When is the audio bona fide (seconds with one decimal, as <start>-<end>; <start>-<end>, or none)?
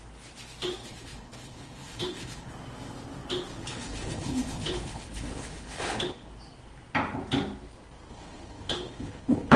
0.0-0.8; 2.5-3.6; 6.3-8.1